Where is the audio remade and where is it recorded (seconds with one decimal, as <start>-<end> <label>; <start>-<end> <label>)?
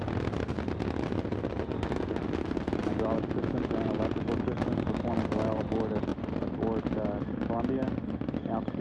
0.0-8.8 recorded